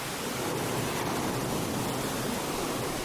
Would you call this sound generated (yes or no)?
no